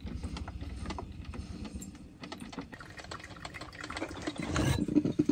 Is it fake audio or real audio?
real